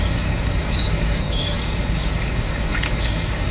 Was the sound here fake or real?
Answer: fake